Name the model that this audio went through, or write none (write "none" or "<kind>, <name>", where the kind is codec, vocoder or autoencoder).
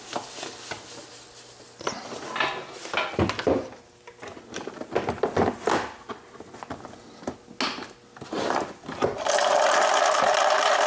none